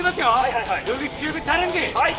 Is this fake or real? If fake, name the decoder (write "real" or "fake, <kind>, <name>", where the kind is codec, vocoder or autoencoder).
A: fake, codec, DAC